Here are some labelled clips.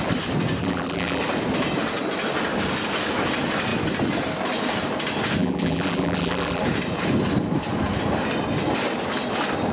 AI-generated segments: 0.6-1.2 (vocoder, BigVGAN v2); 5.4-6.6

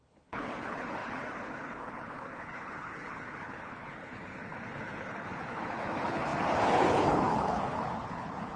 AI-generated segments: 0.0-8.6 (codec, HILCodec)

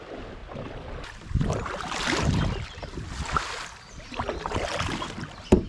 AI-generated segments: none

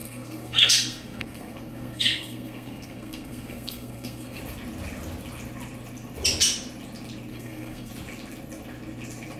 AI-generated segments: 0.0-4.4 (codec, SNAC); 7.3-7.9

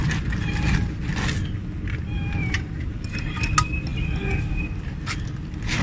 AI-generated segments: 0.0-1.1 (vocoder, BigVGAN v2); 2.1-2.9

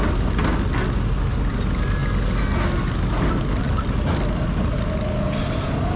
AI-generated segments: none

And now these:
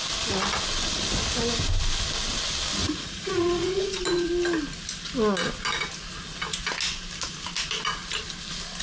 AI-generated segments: 2.8-4.3 (vocoder, Vocos)

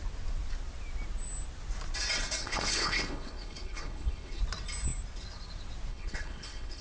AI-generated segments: 2.4-4.4 (codec, HILCodec); 5.9-6.8